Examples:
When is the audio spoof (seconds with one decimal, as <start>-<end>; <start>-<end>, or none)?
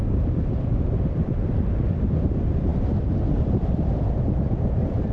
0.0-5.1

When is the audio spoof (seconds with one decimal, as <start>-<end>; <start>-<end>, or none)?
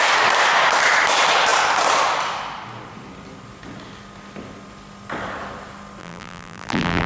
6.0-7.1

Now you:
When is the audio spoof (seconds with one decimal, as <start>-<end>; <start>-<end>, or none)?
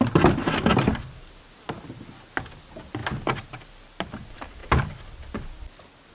3.0-3.6